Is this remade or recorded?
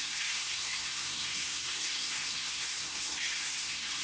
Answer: remade